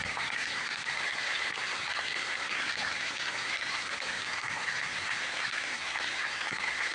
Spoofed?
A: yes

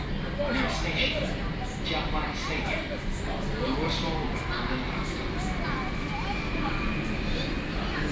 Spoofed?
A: no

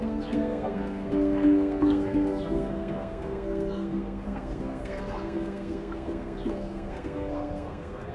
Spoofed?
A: yes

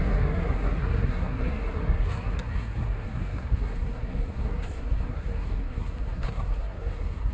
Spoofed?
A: yes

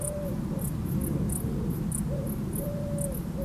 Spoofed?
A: no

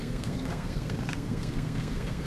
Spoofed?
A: yes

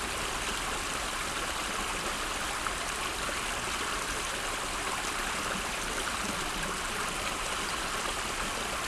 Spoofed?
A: no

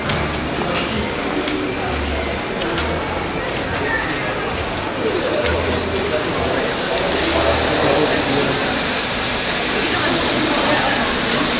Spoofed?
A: no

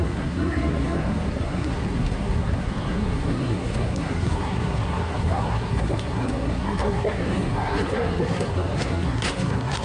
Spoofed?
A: yes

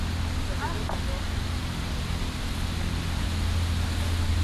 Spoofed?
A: no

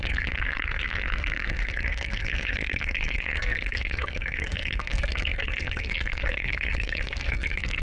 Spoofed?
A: yes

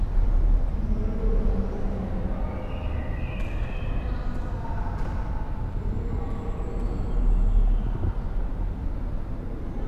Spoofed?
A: no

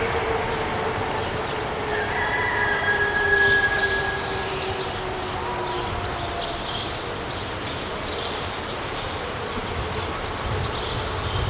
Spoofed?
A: no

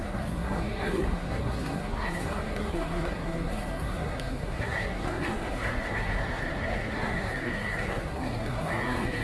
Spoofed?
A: yes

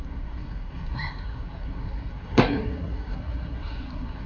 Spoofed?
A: yes